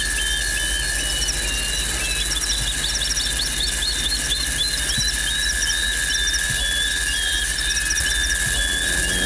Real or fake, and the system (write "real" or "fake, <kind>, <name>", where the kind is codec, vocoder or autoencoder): real